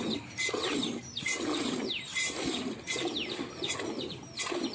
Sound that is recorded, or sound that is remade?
recorded